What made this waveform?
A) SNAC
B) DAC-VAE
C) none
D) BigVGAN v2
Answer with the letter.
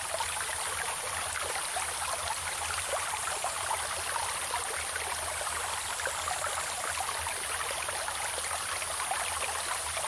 C